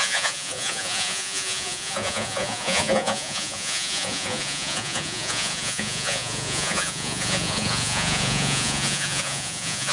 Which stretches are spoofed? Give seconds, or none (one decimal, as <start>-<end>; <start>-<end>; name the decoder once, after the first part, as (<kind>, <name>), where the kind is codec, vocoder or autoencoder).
0.0-9.9 (vocoder, Vocos)